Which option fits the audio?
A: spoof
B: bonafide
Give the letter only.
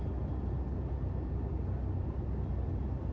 B